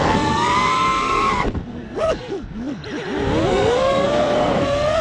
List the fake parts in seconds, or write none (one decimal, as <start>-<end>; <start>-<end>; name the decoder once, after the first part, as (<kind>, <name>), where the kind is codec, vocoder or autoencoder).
0.0-2.8 (codec, SNAC); 3.5-5.0